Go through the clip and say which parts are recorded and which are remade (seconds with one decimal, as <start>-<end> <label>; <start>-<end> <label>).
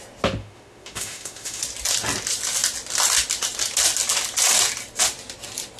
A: 0.0-0.4 recorded; 0.4-1.6 remade; 1.6-5.8 recorded